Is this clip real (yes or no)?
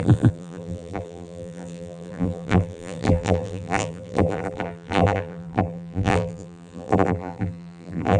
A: no